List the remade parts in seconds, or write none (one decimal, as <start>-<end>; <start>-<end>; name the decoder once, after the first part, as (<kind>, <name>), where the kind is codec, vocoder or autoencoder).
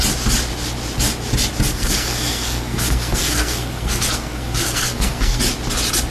1.7-5.4 (codec, SNAC)